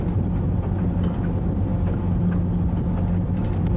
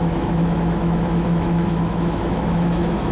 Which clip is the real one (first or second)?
first